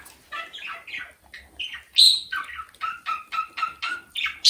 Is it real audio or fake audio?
real